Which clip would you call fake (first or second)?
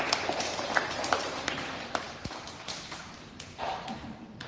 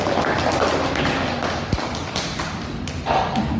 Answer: first